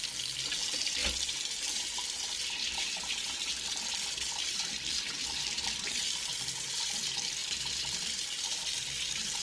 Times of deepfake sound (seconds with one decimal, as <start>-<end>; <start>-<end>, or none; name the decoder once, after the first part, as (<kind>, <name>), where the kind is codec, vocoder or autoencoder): 0.6-1.0 (vocoder, BigVGAN v2); 1.6-9.4